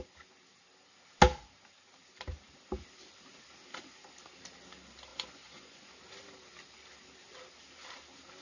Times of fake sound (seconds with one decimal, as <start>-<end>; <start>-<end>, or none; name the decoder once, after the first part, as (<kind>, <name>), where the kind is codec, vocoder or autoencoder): 5.1-5.9 (vocoder, Vocos)